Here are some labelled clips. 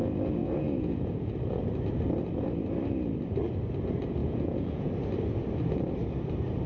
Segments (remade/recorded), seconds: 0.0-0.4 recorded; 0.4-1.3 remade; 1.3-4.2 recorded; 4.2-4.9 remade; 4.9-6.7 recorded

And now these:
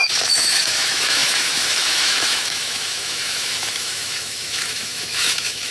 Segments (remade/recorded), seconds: 0.0-5.7 remade

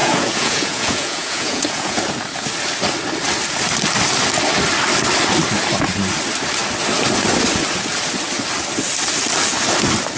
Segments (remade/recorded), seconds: 0.0-2.0 remade; 2.0-10.2 recorded

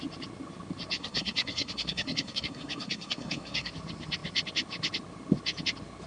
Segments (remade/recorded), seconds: 0.0-1.0 recorded; 1.0-3.7 remade; 3.7-6.1 recorded

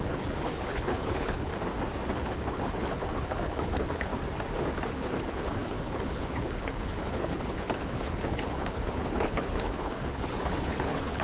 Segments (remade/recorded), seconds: 0.0-1.5 remade; 1.5-2.1 recorded; 2.1-4.1 remade; 4.1-4.9 recorded; 4.9-11.2 remade